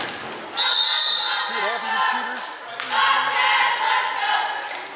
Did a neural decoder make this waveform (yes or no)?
no